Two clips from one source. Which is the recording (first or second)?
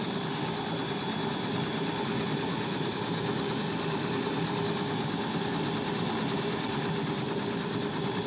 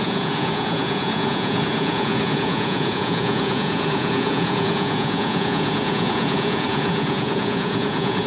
first